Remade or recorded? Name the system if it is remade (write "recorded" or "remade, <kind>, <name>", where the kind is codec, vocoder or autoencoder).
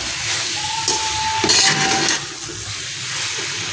recorded